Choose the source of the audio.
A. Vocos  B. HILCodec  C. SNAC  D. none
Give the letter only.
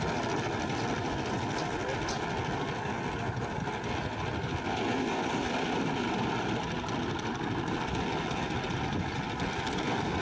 D